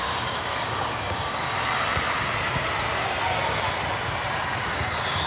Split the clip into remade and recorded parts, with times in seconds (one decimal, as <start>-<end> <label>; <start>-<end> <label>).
0.0-1.5 remade; 1.5-4.7 recorded; 4.7-5.3 remade